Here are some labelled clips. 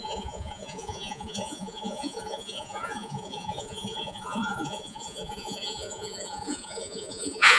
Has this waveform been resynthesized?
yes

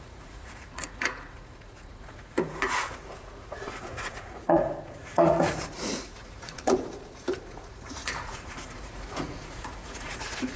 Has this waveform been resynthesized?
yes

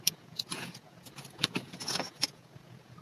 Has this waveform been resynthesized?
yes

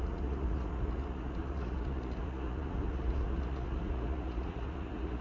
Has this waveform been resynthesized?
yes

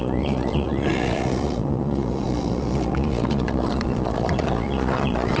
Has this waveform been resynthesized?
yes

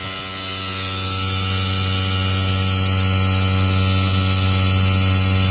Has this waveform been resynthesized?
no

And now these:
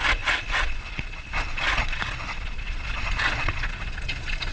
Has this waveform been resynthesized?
yes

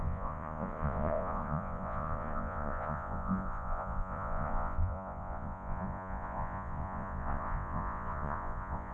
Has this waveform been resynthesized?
yes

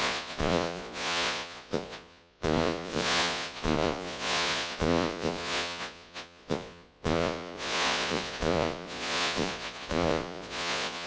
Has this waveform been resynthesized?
yes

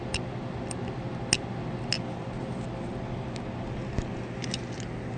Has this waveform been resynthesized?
no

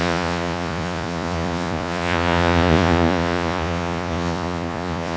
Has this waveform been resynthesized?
yes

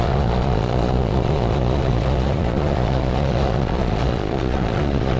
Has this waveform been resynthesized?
yes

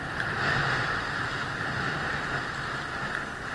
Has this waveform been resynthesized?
no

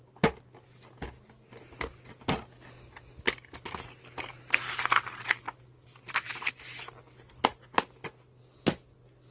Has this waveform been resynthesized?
no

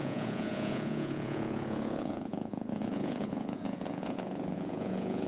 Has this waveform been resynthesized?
yes